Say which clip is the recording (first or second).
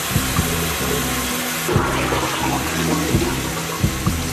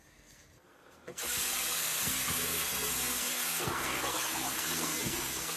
first